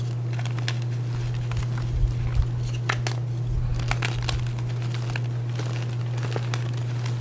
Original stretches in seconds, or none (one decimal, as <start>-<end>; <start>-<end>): 0.0-7.2